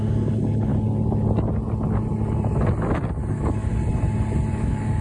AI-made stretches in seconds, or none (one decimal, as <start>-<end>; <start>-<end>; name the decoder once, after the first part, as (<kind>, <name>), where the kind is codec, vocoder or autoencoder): 0.0-0.7 (codec, DAC); 3.3-3.7; 4.5-5.0